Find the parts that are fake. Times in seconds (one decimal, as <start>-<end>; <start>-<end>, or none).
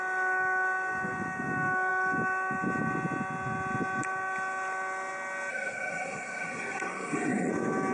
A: 5.5-7.5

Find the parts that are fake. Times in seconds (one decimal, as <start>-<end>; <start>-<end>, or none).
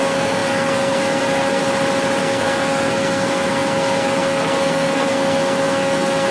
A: 0.0-1.6; 2.2-6.3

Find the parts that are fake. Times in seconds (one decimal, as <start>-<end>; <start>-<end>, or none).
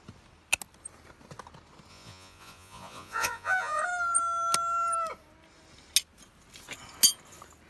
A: 1.9-3.8